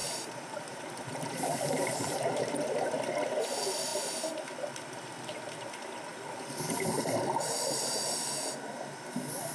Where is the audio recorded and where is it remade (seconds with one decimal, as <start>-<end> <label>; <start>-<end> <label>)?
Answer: 0.0-2.9 remade; 2.9-9.5 recorded